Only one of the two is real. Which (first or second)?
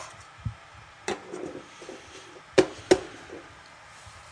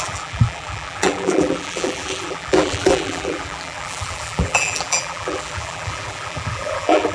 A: first